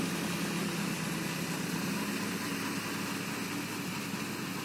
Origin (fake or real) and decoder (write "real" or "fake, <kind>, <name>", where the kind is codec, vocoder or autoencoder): real